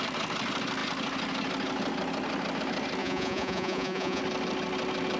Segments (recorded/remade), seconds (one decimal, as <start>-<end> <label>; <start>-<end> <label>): 0.0-3.0 recorded; 3.0-4.2 remade; 4.2-5.2 recorded

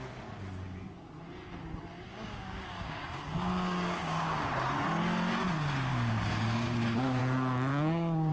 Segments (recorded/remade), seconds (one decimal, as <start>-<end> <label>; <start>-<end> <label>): 0.0-2.1 recorded; 2.1-4.5 remade; 4.5-5.9 recorded; 5.9-7.2 remade; 7.2-7.7 recorded; 7.7-8.3 remade

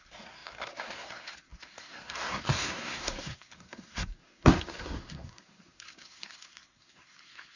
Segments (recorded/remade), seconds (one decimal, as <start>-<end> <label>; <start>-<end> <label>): 0.0-7.6 remade

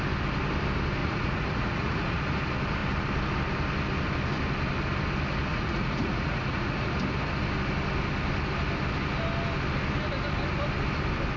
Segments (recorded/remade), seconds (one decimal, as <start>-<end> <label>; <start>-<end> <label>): 0.0-1.0 recorded; 1.0-2.2 remade; 2.2-5.5 recorded; 5.5-6.9 remade; 6.9-11.4 recorded

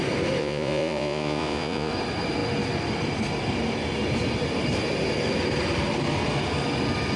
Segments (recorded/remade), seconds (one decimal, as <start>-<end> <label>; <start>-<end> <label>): 0.0-0.4 recorded; 0.4-1.9 remade; 1.9-7.2 recorded

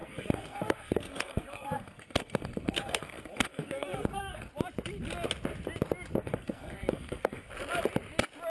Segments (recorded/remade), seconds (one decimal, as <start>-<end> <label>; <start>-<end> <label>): 0.0-4.5 remade; 4.5-6.2 recorded; 6.2-7.5 remade; 7.5-8.5 recorded

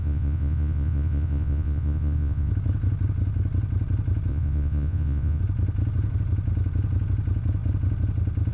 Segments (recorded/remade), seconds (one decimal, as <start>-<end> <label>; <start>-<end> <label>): 0.0-2.5 remade; 2.5-4.3 recorded; 4.3-5.4 remade; 5.4-8.5 recorded

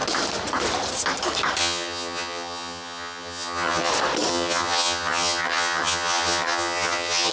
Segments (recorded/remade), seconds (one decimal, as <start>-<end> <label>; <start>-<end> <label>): 0.0-1.6 recorded; 1.6-3.9 remade; 3.9-4.3 recorded; 4.3-7.3 remade